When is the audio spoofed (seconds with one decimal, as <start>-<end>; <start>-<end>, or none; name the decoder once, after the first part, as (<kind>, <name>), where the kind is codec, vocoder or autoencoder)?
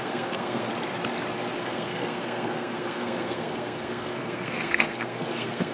0.0-0.7 (codec, SNAC); 1.6-5.7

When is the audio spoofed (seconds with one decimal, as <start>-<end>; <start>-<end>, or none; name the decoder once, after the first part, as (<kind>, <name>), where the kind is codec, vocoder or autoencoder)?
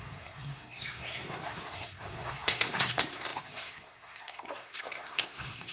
0.0-5.7 (codec, SNAC)